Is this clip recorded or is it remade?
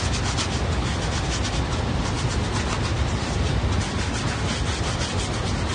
recorded